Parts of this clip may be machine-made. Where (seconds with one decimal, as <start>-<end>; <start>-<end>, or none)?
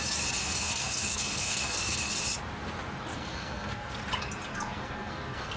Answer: 0.4-2.0; 3.1-4.0; 4.5-5.6